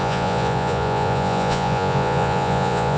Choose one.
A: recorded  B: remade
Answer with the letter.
B